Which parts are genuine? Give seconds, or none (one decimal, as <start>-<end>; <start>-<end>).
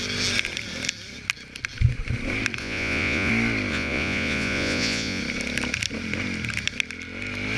0.0-2.6; 3.3-3.7; 5.2-7.6